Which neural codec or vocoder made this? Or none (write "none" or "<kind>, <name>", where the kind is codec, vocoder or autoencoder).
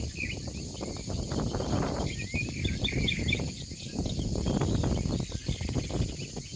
none